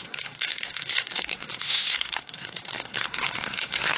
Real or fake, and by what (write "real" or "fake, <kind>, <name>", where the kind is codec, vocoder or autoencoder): fake, codec, SNAC